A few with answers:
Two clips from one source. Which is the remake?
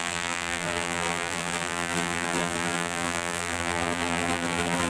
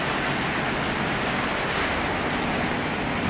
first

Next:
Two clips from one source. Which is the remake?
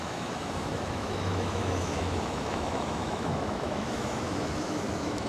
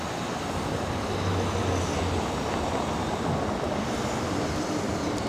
first